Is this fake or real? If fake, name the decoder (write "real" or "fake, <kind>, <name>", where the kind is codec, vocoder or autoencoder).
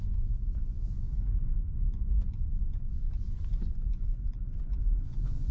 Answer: fake, vocoder, Vocos